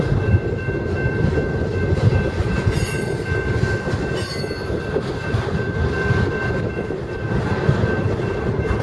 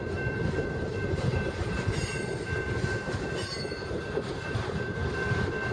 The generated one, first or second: second